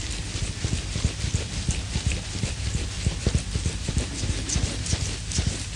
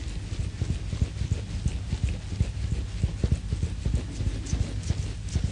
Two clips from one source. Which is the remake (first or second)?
first